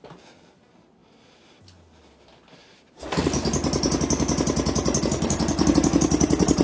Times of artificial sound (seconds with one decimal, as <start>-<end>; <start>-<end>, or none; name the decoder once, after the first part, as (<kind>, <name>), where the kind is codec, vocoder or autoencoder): 0.0-1.0 (vocoder, BigVGAN v2); 5.0-6.6